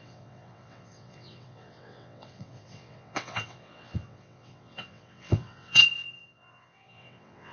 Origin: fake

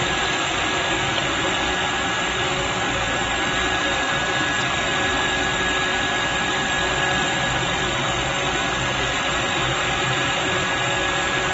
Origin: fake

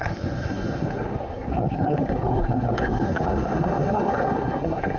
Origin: fake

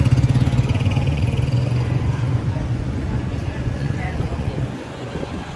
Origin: fake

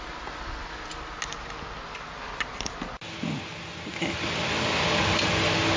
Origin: real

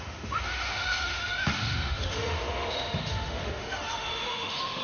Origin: fake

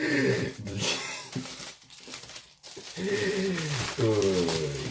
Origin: fake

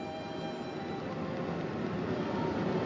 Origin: real